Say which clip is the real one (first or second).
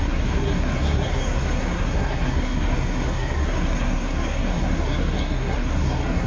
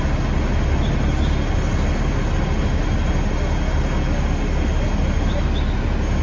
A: second